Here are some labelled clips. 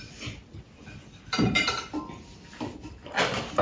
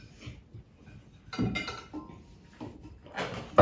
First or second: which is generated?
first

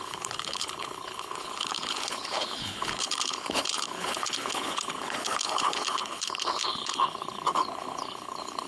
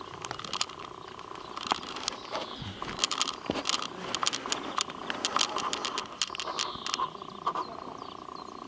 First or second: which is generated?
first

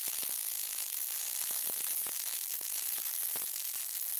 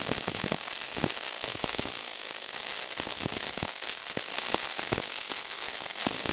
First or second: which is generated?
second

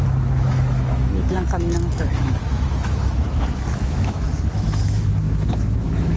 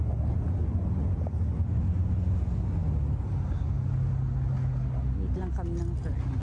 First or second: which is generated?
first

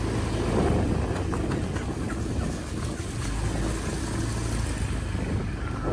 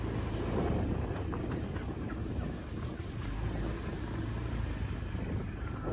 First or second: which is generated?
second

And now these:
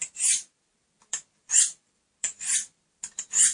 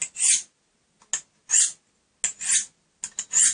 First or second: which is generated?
first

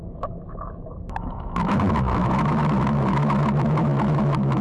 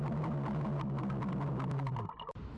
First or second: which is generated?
first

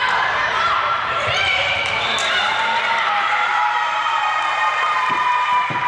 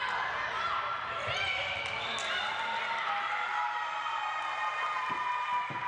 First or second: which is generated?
first